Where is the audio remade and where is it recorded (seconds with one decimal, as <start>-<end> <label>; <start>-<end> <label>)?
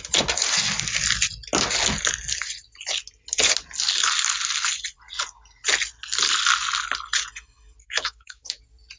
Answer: 0.0-7.8 recorded; 7.8-8.6 remade; 8.6-9.0 recorded